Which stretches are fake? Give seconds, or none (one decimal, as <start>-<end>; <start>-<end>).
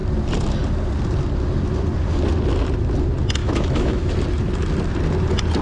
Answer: 3.4-4.1